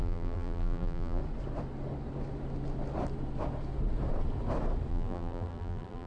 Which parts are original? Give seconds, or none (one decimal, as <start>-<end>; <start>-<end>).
1.2-4.9